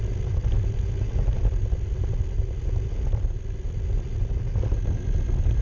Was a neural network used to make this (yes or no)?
no